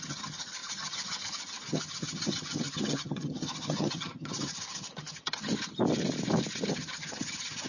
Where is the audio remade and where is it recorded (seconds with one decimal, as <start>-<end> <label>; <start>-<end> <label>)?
0.0-5.5 remade; 5.5-6.7 recorded; 6.7-7.7 remade